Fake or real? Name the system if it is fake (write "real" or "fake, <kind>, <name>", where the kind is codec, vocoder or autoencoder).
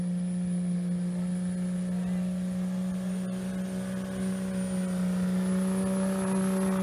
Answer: real